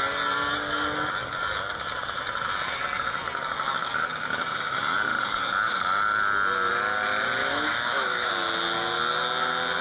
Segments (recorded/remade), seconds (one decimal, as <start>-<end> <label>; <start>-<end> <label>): 0.0-7.4 recorded; 7.4-8.3 remade; 8.3-9.8 recorded